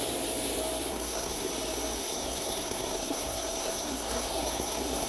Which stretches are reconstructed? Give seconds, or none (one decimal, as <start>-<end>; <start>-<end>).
0.9-1.5; 2.0-5.1